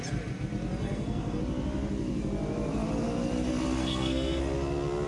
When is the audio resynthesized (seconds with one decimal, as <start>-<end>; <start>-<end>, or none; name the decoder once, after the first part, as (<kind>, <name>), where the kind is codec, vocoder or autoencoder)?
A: 0.8-1.4 (codec, SNAC); 3.8-4.4